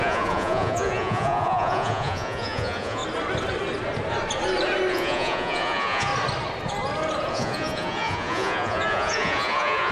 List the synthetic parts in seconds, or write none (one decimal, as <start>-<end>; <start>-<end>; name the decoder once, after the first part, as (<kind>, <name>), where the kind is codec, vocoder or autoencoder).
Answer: 0.0-3.0 (vocoder, Vocos); 4.9-6.1; 7.3-9.9